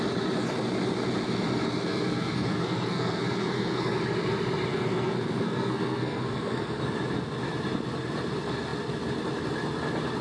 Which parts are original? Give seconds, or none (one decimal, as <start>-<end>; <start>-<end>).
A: 0.0-1.6; 3.9-4.7; 6.8-10.2